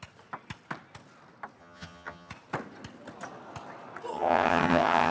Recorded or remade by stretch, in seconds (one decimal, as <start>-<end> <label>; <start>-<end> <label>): 0.0-1.6 recorded; 1.6-2.3 remade; 2.3-4.1 recorded; 4.1-5.1 remade